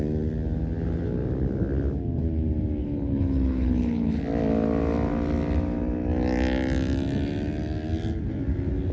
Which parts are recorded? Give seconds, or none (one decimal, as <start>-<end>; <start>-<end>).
0.0-2.8; 4.2-8.9